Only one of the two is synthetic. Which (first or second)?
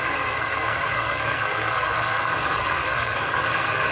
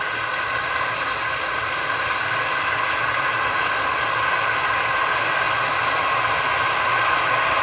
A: first